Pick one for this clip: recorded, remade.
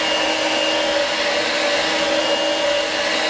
recorded